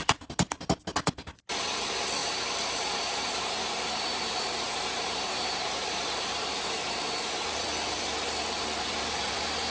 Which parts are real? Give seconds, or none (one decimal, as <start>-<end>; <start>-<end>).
0.0-2.2; 7.3-9.7